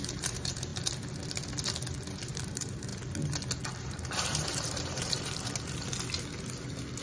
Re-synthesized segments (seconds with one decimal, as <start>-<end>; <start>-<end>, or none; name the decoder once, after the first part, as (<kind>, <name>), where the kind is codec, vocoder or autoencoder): 0.0-0.7 (vocoder, BigVGAN v2); 2.1-2.9; 3.8-5.9